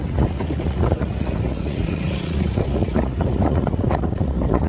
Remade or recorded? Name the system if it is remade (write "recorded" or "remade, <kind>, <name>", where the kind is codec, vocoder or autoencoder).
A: remade, vocoder, Vocos